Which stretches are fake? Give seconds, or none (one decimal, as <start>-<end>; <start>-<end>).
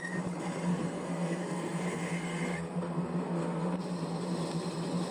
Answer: 0.7-3.8